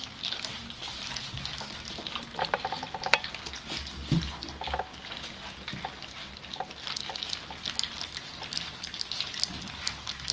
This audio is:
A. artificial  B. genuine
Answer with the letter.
B